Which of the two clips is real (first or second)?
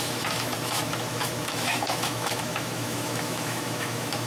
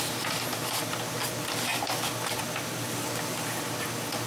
second